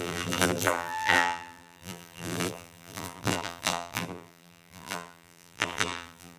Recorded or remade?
remade